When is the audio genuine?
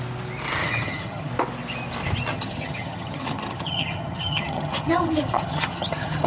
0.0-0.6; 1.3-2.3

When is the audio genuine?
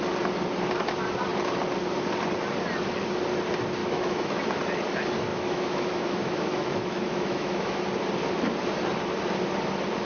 0.0-3.8; 4.4-5.3; 7.8-10.0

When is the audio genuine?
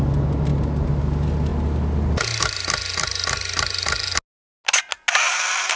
0.0-5.8